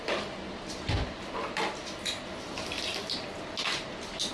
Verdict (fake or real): real